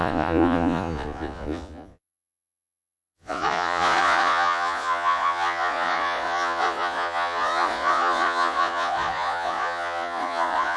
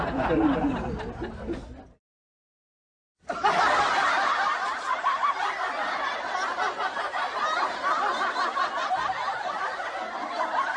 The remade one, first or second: first